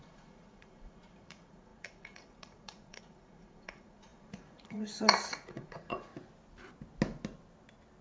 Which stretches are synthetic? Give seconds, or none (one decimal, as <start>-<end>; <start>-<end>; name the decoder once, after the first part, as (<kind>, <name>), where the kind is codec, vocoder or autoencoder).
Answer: 0.0-6.1 (vocoder, Vocos)